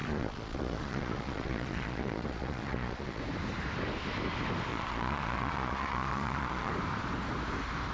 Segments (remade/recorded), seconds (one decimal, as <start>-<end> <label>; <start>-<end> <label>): 0.0-3.2 remade; 3.2-4.7 recorded; 4.7-6.7 remade; 6.7-7.9 recorded